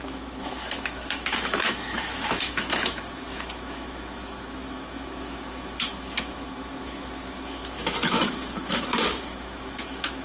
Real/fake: fake